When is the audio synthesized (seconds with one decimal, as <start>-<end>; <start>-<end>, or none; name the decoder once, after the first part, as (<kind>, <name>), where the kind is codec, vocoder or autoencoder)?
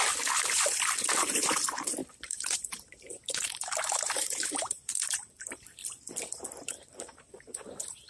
0.0-5.8 (vocoder, BigVGAN v2); 6.7-8.1